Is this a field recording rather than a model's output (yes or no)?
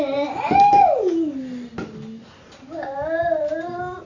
yes